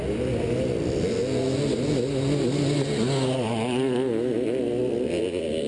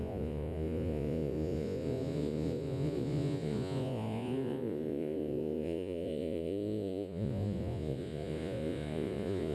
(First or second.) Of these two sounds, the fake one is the second